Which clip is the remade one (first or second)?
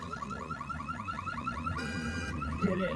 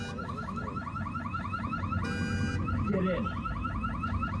first